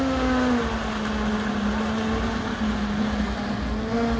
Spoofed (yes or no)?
no